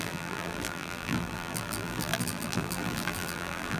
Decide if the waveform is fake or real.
fake